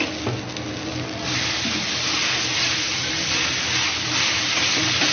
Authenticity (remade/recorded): recorded